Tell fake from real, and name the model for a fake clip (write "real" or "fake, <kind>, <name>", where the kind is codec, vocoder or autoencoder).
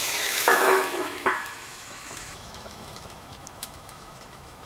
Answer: fake, autoencoder, DAC-VAE